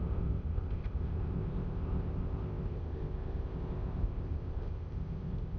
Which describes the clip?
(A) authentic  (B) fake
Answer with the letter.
B